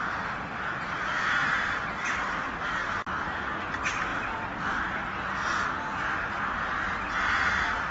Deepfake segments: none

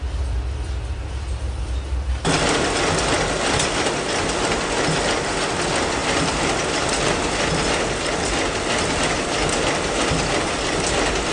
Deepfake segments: none

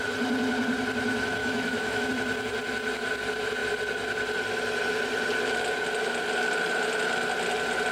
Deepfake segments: 1.4-2.1 (autoencoder, DAC-VAE)